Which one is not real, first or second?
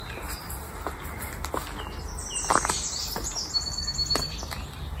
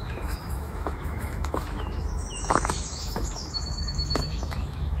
second